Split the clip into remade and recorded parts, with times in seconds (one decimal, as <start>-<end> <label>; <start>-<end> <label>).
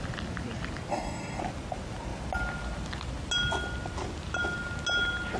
0.0-0.9 recorded; 0.9-1.4 remade; 1.4-5.4 recorded